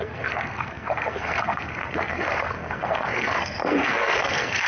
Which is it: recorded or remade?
remade